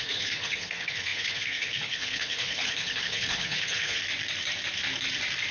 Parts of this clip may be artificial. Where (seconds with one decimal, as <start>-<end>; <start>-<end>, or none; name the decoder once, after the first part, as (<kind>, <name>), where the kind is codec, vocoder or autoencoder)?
0.0-4.0 (codec, HILCodec)